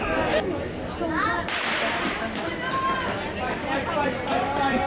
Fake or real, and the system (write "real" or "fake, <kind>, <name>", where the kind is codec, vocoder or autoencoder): real